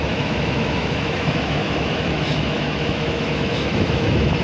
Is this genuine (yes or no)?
no